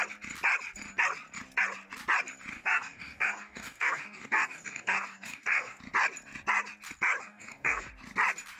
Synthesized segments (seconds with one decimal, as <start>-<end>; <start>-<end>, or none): 2.5-5.8; 7.2-7.9